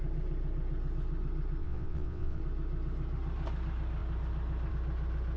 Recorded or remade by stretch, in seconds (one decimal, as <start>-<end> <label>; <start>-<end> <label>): 0.0-1.6 recorded; 1.6-2.4 remade; 2.4-5.4 recorded